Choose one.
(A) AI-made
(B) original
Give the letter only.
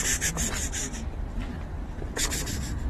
B